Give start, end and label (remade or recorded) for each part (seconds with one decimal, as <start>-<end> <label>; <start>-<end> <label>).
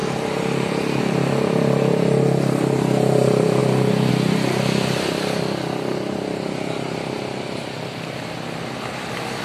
0.0-1.0 remade; 1.0-9.4 recorded